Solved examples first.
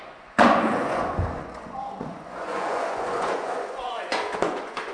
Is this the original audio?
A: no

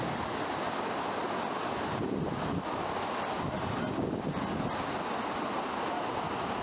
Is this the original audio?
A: yes